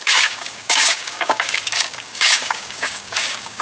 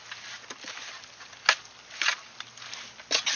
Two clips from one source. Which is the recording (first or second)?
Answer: second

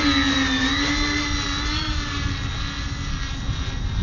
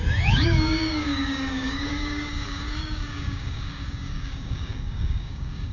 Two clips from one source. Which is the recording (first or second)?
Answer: first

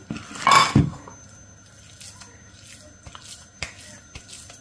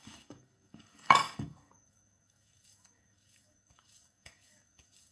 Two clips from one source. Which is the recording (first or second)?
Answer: first